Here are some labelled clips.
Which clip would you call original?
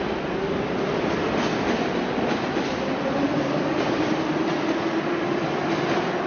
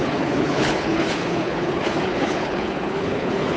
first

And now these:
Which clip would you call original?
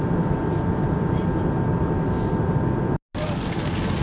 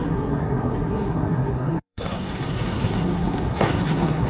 first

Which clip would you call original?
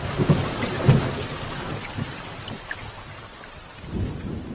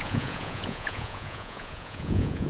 first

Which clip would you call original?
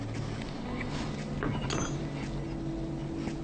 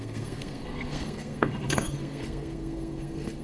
first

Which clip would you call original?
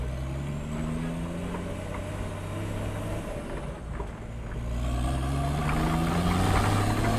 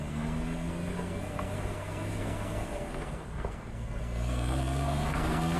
first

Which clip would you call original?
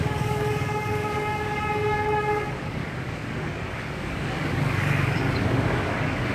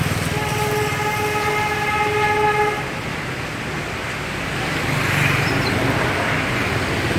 second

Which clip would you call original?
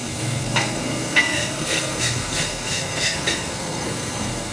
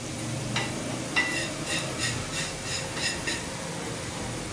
second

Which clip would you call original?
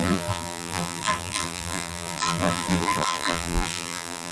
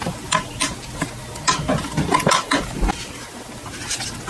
second